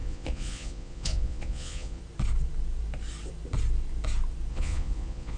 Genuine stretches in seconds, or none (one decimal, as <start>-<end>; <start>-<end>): 2.0-4.5